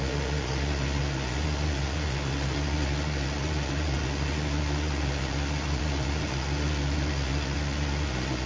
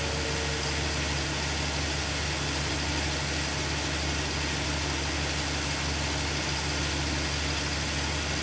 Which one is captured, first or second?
second